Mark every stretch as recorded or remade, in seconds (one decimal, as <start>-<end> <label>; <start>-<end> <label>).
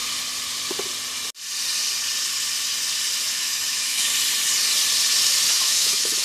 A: 0.0-3.2 recorded; 3.2-4.1 remade; 4.1-5.5 recorded; 5.5-6.2 remade